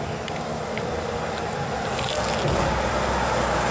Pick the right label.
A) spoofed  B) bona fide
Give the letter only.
B